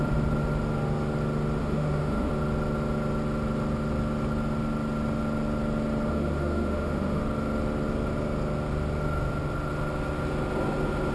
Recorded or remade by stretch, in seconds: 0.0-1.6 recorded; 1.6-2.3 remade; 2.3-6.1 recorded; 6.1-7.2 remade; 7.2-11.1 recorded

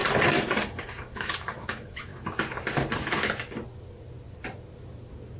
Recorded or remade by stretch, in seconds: 0.0-1.0 recorded; 1.0-2.1 remade; 2.1-5.4 recorded

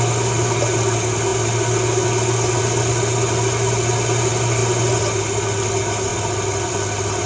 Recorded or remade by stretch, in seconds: 0.0-7.3 recorded

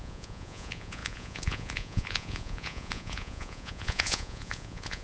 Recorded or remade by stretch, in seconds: 0.0-5.0 remade

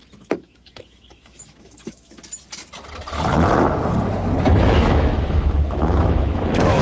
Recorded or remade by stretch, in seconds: 0.0-2.2 remade; 2.2-4.6 recorded; 4.6-6.8 remade

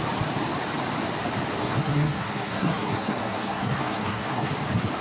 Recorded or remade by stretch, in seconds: 0.0-1.6 recorded; 1.6-4.5 remade; 4.5-5.0 recorded

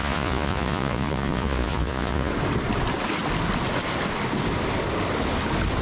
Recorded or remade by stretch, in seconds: 0.0-2.3 remade; 2.3-5.8 recorded

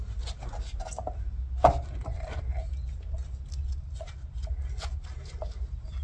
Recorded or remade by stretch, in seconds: 0.0-6.0 recorded